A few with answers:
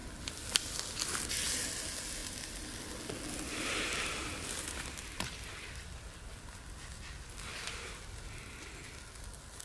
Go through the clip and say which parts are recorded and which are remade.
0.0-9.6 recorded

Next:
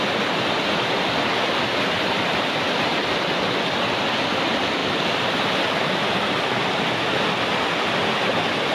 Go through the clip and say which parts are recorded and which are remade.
0.0-1.7 recorded; 1.7-3.0 remade; 3.0-8.7 recorded

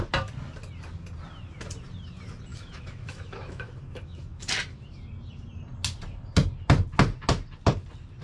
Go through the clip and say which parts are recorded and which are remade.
0.0-2.5 recorded; 2.5-4.4 remade; 4.4-8.2 recorded

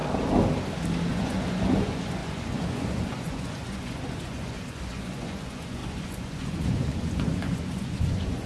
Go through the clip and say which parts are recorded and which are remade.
0.0-1.1 recorded; 1.1-8.5 remade

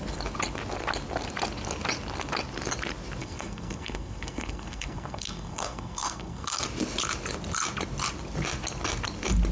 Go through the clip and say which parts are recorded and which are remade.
0.0-3.2 recorded; 3.2-6.6 remade; 6.6-9.5 recorded